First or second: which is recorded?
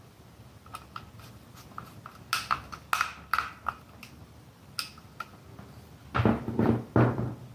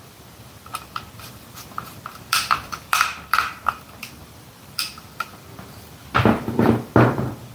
first